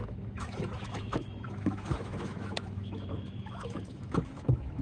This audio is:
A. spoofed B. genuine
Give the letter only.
A